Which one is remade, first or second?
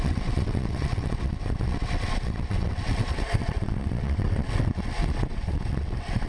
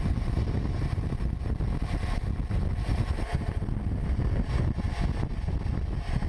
first